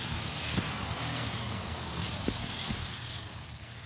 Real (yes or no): no